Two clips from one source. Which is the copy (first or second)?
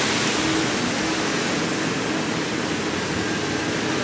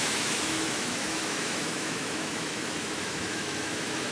second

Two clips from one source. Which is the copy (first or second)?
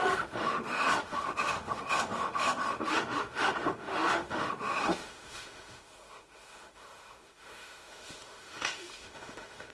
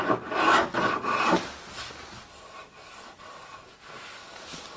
first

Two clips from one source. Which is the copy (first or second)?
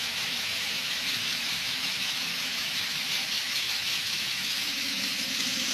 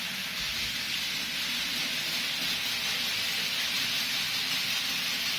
first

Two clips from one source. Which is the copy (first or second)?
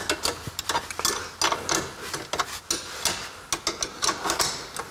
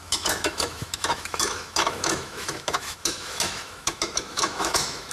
second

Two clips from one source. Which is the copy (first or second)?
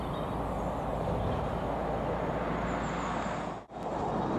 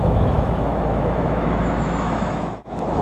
second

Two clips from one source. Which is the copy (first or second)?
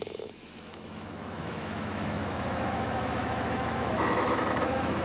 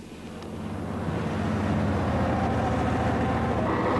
first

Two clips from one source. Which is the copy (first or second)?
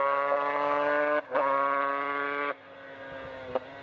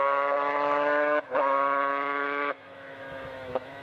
second